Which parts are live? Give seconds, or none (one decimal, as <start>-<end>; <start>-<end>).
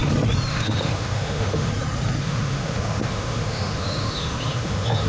0.0-0.5; 1.7-2.2